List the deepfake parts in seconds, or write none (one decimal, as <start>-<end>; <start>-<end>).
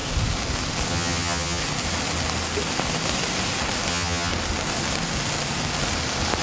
0.9-1.6; 3.9-4.3